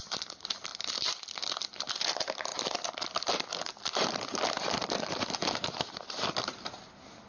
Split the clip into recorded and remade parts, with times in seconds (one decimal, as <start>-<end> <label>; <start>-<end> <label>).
0.0-7.3 remade